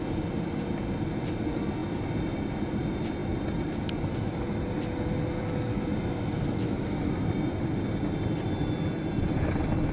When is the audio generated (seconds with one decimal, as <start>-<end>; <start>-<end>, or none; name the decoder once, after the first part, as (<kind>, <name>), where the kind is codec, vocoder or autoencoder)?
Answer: 6.6-7.1 (autoencoder, DAC-VAE)